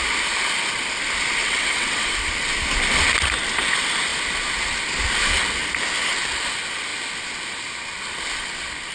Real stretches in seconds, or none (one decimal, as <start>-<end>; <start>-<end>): 0.0-1.4; 2.3-8.9